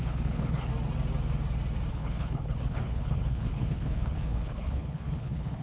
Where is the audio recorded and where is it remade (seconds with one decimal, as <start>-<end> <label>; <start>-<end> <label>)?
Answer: 0.0-0.7 remade; 0.7-1.9 recorded; 1.9-5.6 remade